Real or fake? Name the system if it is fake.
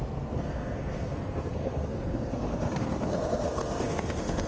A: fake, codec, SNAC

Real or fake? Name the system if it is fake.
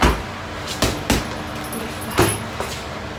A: real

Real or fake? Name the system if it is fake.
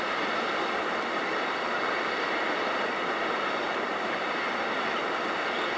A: real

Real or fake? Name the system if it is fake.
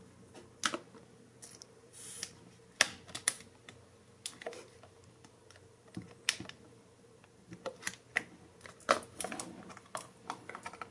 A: real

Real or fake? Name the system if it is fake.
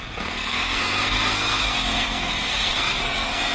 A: fake, codec, SNAC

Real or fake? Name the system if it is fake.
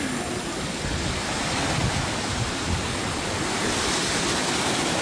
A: real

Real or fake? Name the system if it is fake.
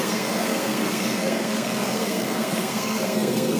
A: fake, codec, SNAC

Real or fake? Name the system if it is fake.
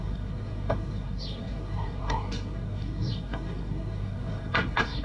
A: fake, codec, SNAC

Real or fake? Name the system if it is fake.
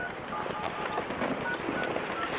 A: real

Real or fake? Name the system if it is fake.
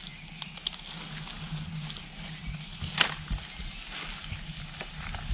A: real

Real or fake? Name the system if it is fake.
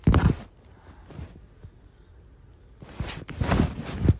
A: real